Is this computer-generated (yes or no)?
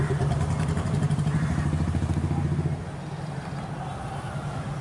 no